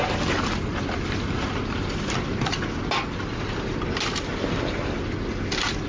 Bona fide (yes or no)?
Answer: yes